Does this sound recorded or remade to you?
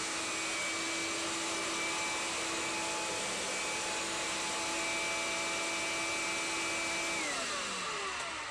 recorded